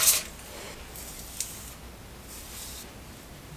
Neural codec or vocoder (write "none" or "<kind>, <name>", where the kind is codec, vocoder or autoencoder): none